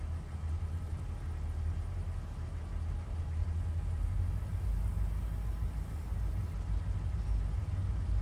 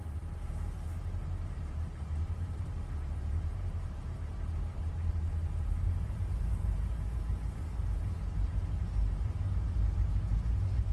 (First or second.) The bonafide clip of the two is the first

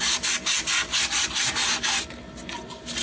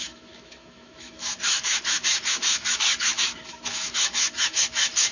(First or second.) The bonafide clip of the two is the first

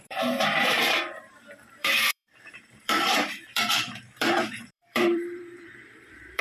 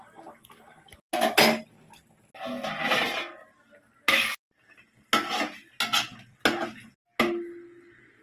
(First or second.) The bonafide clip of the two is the second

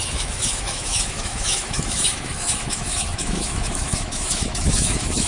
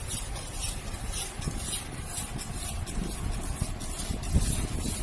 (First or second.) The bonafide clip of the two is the second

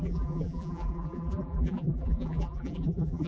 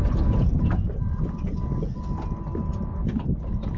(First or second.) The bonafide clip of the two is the second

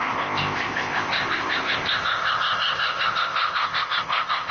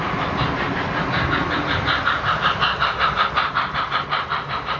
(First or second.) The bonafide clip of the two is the second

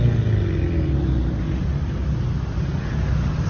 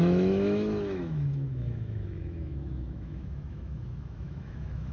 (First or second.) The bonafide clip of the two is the first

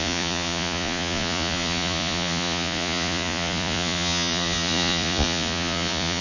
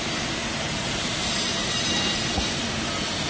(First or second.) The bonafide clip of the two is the second